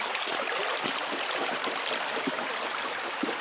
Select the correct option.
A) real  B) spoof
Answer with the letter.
B